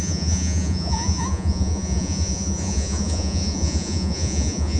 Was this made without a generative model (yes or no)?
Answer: no